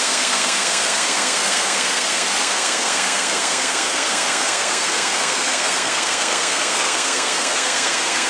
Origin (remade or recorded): remade